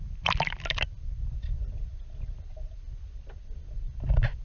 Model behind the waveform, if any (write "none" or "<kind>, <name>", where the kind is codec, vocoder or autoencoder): none